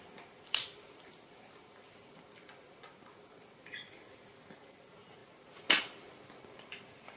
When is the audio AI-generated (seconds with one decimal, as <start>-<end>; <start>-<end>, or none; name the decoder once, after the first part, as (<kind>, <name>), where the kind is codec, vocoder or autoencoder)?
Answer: none